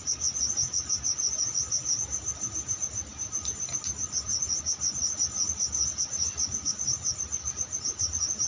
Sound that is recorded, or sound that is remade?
recorded